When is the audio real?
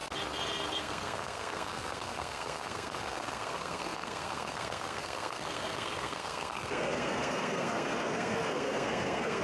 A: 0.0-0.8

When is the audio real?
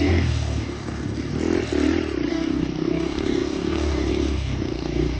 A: 1.3-2.3